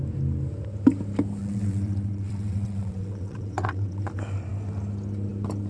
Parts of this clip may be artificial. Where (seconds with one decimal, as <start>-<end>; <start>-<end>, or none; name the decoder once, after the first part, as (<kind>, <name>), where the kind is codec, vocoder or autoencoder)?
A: 1.4-4.0 (vocoder, WaveNeXt)